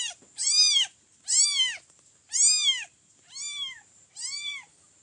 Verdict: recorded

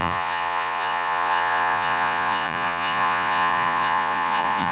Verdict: remade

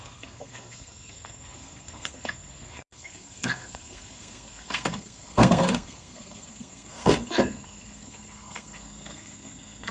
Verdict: remade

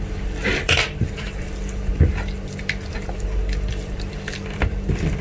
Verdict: remade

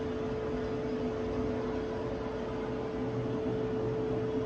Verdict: recorded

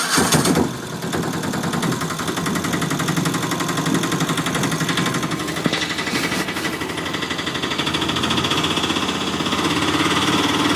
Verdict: recorded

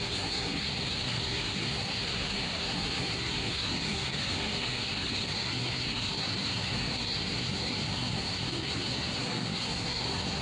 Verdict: remade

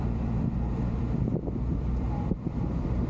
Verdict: remade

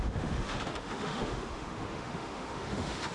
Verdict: remade